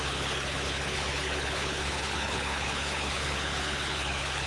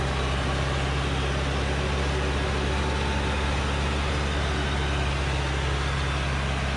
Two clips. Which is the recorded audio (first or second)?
second